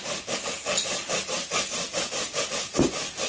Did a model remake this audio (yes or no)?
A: no